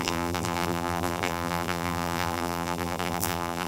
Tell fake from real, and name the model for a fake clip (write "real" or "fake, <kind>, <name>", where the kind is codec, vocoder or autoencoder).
fake, vocoder, BigVGAN v2